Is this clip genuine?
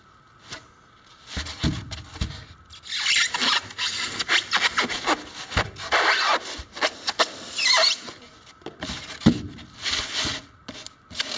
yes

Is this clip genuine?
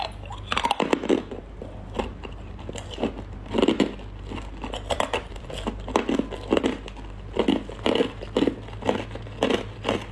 yes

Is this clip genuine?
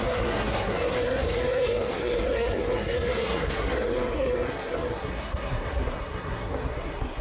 no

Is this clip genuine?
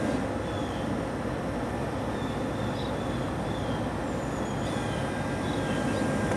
yes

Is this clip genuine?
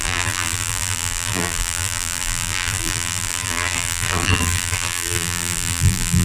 no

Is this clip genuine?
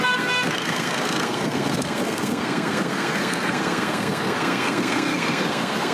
no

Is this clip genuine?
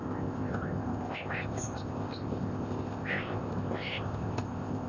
no